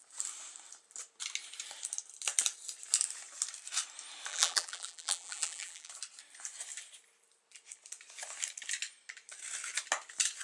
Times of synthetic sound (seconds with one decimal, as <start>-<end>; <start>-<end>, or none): 4.3-5.9